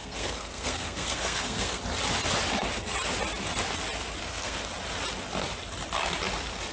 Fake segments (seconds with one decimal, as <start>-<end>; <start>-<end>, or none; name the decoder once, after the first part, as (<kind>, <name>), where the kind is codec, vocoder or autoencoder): 0.0-1.8 (codec, SNAC); 4.2-4.7